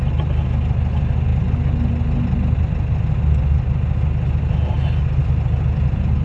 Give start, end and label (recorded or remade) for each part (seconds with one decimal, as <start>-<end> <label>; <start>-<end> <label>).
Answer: 0.0-6.2 recorded